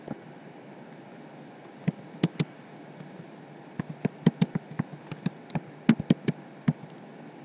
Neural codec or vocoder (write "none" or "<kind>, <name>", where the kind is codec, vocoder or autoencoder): none